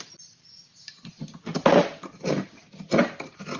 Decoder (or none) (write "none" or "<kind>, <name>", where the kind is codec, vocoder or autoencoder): none